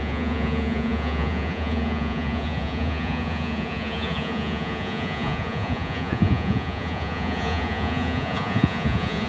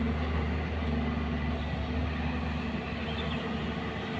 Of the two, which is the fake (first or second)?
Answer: first